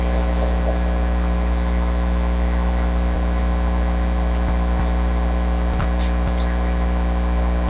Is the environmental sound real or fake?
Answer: real